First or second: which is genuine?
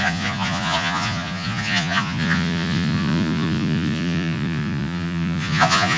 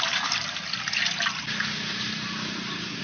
second